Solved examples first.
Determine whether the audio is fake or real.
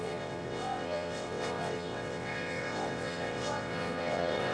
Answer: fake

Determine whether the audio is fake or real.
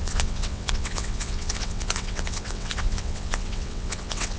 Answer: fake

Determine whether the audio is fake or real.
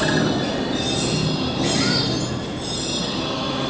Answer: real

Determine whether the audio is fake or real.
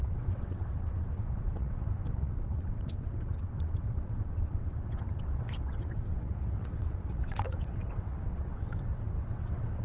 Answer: fake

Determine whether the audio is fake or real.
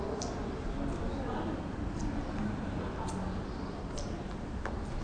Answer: real